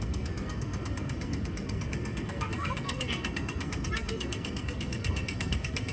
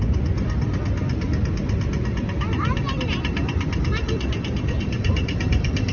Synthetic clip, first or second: first